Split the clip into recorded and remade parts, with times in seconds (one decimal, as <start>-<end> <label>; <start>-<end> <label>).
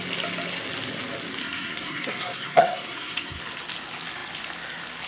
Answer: 0.0-1.4 recorded; 1.4-3.4 remade; 3.4-5.1 recorded